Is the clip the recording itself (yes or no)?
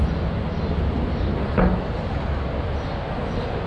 yes